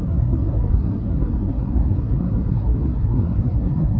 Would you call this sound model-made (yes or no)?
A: yes